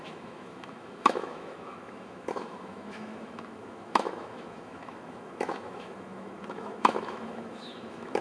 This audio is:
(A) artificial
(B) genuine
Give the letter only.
A